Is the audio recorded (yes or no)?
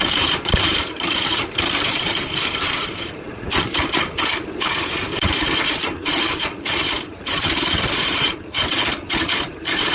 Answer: no